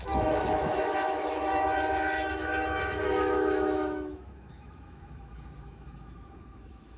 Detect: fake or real fake